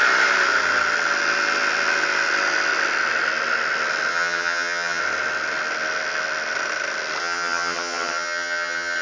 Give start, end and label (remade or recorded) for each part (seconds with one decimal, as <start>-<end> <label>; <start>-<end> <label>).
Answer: 0.0-4.1 recorded; 4.1-5.0 remade; 5.0-7.2 recorded; 7.2-9.0 remade